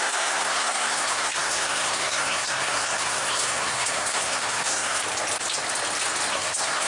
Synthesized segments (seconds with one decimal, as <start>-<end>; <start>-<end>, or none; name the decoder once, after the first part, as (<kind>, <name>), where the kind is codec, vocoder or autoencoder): 0.0-5.0 (codec, SNAC); 6.3-6.9